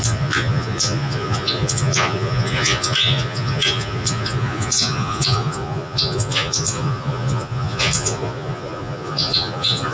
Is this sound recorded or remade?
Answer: remade